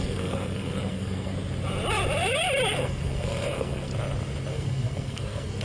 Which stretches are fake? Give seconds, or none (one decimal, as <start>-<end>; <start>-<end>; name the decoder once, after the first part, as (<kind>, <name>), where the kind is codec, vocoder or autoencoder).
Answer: 0.0-1.3 (codec, SNAC); 2.7-3.9; 4.5-5.6